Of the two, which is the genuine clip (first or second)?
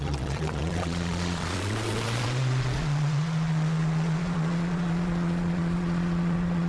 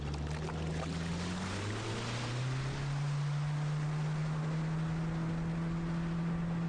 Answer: second